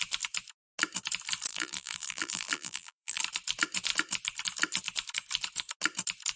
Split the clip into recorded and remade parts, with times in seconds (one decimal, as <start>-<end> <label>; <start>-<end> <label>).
0.0-1.5 recorded; 1.5-3.2 remade; 3.2-6.4 recorded